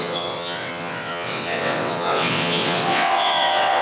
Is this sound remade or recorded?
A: remade